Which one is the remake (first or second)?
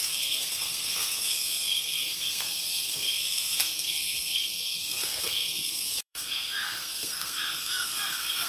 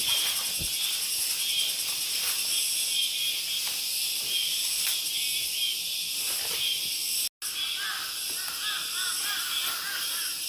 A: first